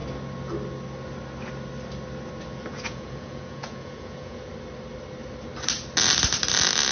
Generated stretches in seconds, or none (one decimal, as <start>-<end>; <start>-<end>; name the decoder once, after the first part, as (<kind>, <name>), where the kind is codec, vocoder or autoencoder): 2.7-4.5 (vocoder, Vocos)